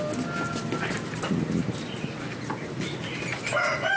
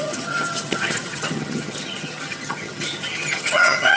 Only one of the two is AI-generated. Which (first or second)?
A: second